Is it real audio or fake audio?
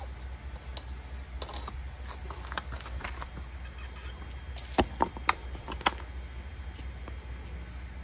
real